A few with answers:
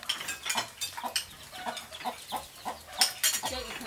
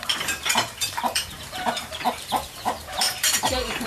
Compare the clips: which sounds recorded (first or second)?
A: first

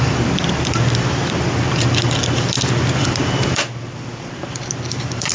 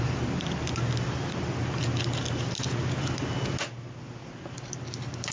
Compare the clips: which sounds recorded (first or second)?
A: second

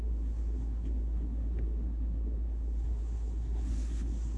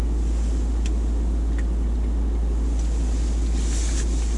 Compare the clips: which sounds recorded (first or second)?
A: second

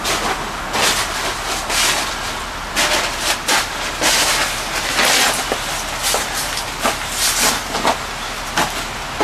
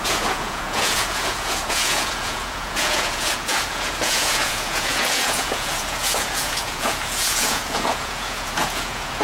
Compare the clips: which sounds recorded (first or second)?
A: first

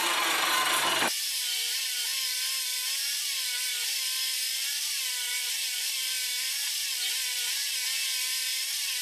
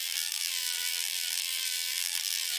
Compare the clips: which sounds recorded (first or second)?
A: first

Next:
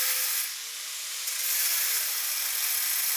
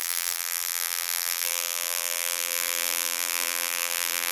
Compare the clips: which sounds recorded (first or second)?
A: first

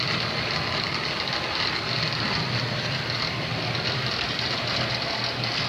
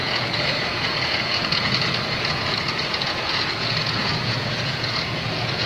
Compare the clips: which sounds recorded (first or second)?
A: first